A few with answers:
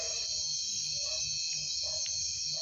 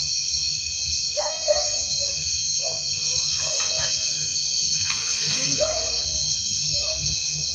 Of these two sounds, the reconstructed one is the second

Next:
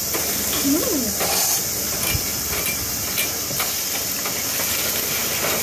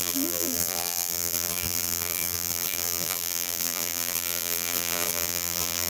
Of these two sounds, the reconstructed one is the second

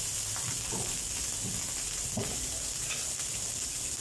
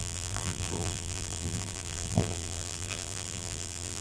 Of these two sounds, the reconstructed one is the second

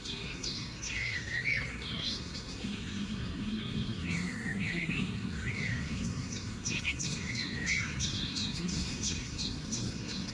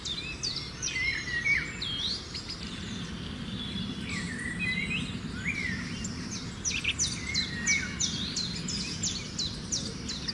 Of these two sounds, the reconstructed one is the first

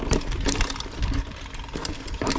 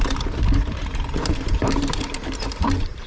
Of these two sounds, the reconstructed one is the second